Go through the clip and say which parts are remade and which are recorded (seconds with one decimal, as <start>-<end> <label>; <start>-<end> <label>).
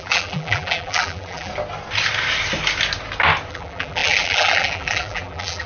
0.0-1.5 remade; 1.5-3.5 recorded; 3.5-5.7 remade